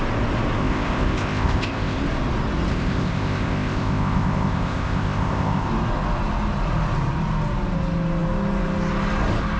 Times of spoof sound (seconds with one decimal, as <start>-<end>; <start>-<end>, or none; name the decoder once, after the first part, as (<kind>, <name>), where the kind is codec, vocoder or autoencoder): 0.6-2.0 (codec, ZipCodec); 2.7-5.7